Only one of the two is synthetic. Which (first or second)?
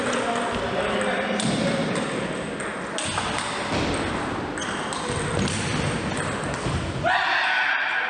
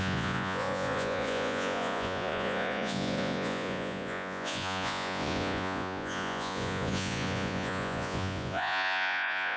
second